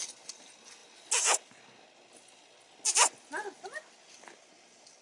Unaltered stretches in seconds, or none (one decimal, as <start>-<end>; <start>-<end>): 0.0-5.0